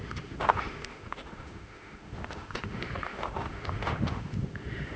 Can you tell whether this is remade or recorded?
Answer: remade